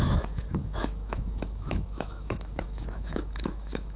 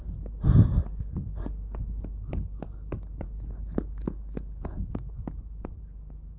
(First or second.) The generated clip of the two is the first